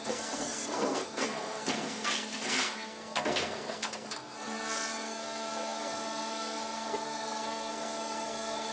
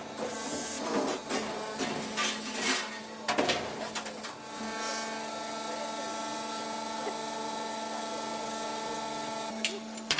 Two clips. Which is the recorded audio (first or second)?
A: second